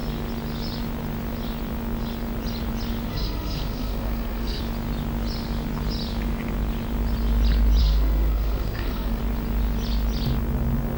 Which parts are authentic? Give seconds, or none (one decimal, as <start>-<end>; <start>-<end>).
0.0-3.1; 4.6-7.8; 9.2-11.0